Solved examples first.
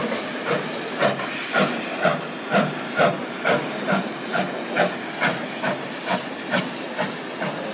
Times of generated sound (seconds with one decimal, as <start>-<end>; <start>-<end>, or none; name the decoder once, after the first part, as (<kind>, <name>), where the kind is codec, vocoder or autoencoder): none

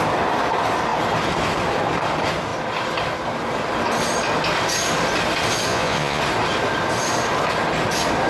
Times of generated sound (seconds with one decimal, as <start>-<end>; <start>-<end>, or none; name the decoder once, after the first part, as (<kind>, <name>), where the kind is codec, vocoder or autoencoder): 5.7-6.2 (vocoder, Vocos)

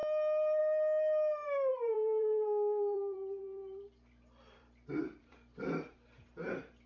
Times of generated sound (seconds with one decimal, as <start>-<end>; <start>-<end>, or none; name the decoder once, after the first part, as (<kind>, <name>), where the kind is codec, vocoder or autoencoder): 1.7-5.8 (vocoder, BigVGAN v2)